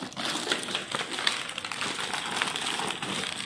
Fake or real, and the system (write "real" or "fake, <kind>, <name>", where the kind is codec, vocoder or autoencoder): real